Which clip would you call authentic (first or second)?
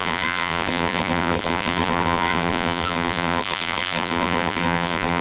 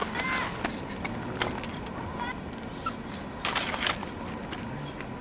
second